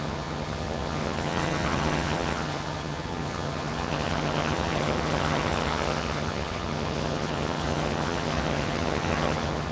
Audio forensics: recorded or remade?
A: remade